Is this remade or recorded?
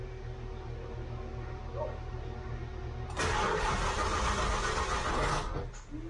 recorded